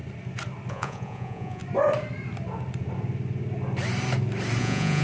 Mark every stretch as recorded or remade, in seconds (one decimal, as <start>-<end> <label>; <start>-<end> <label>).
0.0-0.7 recorded; 0.7-1.6 remade; 1.6-4.6 recorded; 4.6-5.0 remade